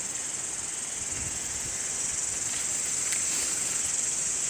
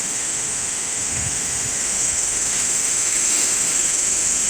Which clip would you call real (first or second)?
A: first